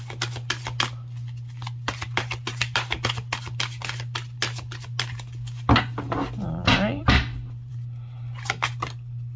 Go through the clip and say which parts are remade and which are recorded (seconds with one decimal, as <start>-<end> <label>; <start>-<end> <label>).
0.0-9.4 recorded